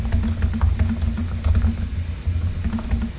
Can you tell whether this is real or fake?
real